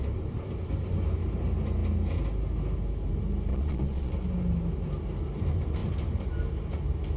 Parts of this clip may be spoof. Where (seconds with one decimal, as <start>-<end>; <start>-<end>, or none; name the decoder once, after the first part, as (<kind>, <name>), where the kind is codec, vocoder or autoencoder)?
3.5-4.1 (vocoder, Vocos)